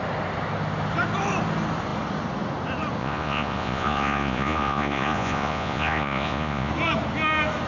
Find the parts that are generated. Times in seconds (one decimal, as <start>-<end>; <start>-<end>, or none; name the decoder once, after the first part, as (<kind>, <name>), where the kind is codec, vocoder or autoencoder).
3.0-6.7 (vocoder, Vocos)

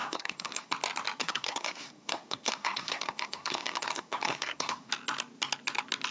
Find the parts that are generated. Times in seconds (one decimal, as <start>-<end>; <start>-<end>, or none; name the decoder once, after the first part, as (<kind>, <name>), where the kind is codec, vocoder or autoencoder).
0.0-0.7 (codec, SNAC); 1.2-4.9

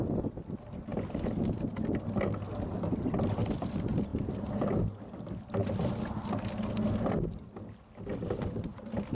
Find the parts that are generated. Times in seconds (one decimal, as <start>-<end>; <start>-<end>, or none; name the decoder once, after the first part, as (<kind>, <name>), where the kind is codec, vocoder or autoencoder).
0.0-0.9 (vocoder, BigVGAN v2); 3.6-5.6; 7.7-9.1

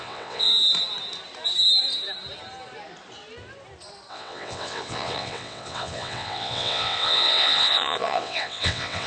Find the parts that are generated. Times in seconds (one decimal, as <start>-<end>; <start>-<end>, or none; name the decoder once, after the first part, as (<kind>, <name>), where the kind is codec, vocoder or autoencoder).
0.0-0.5 (vocoder, WaveNeXt); 4.1-9.1

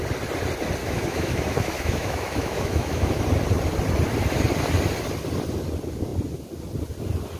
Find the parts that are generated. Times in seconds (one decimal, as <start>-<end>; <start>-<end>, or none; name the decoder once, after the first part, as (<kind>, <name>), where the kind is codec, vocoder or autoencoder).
0.8-3.2 (autoencoder, DAC-VAE)

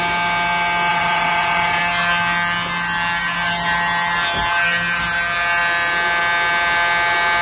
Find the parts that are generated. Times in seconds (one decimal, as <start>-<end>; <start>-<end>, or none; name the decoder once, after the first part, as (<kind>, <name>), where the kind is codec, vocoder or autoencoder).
0.9-1.8 (vocoder, WaveNeXt)

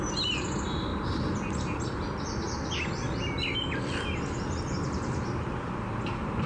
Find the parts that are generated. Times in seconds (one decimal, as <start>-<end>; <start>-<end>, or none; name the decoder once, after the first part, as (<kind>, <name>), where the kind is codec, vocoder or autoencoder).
none

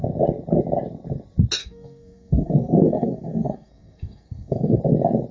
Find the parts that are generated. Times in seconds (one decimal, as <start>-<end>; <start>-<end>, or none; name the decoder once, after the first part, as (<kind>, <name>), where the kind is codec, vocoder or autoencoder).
1.6-4.8 (codec, SNAC)